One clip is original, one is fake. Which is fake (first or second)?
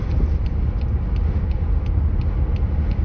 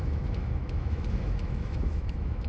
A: second